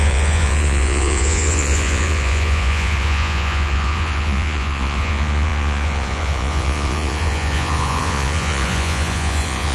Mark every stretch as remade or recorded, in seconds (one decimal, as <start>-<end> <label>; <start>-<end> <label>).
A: 0.0-9.7 remade